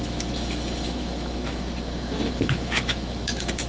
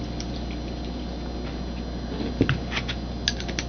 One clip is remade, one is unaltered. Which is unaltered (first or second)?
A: second